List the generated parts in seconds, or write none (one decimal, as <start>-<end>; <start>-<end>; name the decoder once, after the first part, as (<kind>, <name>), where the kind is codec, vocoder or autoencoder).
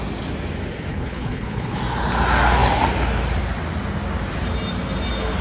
0.9-1.8 (codec, HILCodec)